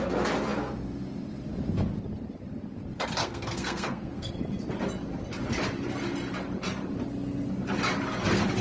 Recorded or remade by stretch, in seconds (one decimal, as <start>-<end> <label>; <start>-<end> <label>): 0.0-3.2 recorded; 3.2-4.3 remade; 4.3-8.6 recorded